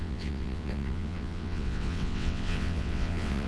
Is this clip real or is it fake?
fake